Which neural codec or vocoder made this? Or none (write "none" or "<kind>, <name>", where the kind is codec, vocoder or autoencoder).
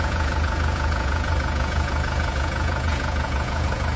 vocoder, Vocos